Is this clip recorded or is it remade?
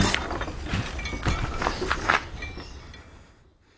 recorded